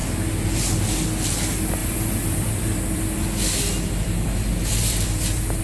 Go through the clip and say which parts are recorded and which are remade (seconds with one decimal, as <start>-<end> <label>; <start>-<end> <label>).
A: 0.0-1.8 recorded; 1.8-5.6 remade